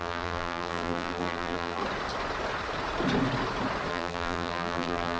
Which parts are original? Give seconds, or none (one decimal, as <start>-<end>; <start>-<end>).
1.8-3.9